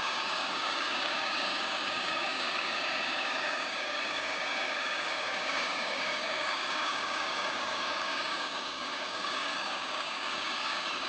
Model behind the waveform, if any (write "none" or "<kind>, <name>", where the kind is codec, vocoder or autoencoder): codec, DAC